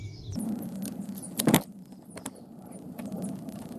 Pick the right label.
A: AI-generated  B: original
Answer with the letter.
A